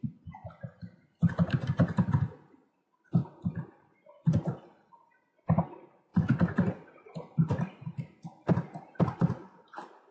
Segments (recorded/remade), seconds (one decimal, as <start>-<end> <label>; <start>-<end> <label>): 0.0-10.1 recorded